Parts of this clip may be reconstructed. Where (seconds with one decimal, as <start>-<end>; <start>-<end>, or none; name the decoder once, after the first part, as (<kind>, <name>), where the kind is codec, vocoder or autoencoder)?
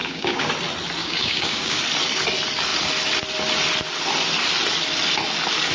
0.0-0.5 (codec, DAC); 1.0-1.8